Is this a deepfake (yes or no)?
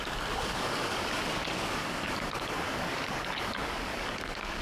yes